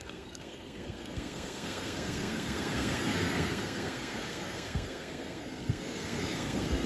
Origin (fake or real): fake